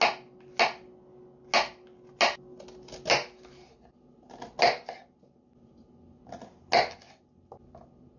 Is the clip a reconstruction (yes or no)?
no